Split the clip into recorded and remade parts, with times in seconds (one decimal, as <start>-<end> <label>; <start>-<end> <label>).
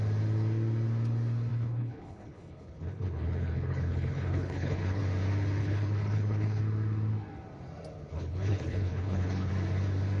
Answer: 0.0-1.5 recorded; 1.5-5.0 remade; 5.0-5.6 recorded; 5.6-6.6 remade; 6.6-8.1 recorded; 8.1-9.5 remade; 9.5-10.2 recorded